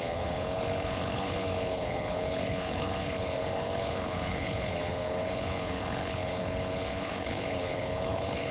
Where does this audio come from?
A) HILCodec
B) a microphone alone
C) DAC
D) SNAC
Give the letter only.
A